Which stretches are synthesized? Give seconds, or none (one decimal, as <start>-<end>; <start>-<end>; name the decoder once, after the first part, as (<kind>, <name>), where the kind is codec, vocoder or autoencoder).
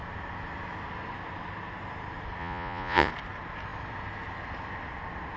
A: 2.4-3.1 (vocoder, Vocos)